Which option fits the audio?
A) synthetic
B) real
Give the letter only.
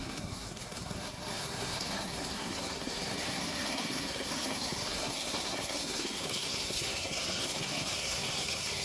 A